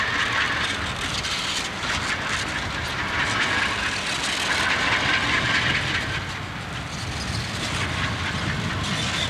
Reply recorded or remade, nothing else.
recorded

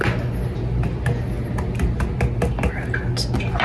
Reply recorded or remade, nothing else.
recorded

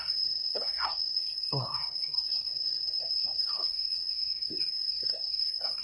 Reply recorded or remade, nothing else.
remade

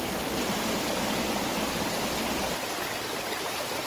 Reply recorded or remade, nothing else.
recorded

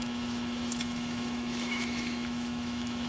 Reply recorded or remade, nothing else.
remade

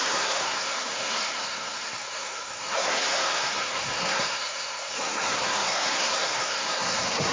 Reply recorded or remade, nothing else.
remade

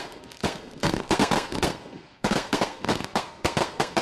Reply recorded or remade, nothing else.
remade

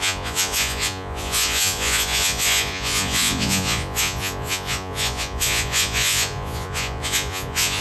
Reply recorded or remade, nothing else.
remade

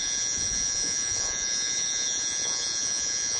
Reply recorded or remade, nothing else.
remade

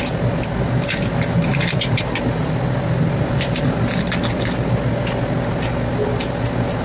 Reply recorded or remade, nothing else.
recorded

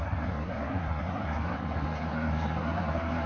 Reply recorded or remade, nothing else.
remade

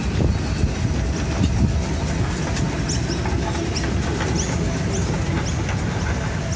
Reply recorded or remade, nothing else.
recorded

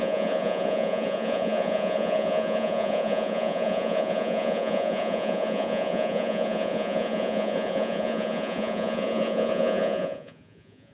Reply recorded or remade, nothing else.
remade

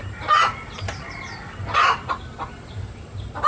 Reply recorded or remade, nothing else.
recorded